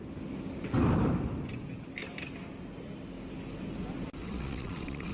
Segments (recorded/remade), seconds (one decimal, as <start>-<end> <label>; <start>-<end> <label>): 0.0-4.2 recorded; 4.2-5.1 remade